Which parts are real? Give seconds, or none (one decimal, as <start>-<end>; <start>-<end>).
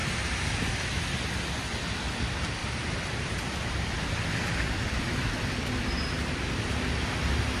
1.0-2.6; 6.5-7.6